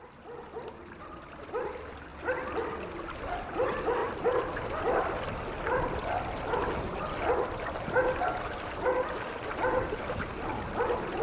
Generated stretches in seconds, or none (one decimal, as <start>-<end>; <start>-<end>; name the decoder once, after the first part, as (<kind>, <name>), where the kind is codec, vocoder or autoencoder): none